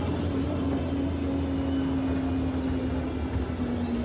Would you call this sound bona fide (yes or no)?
yes